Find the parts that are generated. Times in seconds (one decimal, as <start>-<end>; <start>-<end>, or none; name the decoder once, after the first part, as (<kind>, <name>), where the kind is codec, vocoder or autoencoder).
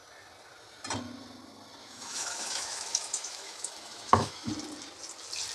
1.8-4.5 (autoencoder, DAC-VAE)